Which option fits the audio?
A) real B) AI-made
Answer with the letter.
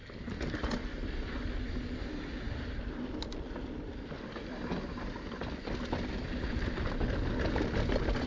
A